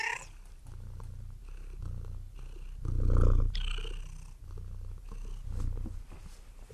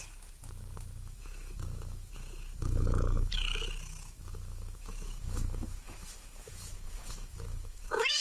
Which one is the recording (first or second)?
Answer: first